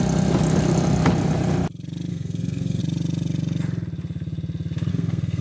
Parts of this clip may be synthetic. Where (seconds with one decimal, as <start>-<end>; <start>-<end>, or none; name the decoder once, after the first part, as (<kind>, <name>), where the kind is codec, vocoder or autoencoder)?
2.1-2.8 (codec, SNAC); 4.9-5.4